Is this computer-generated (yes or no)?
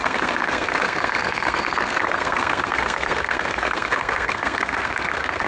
yes